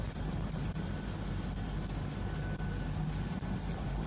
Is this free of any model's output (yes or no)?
yes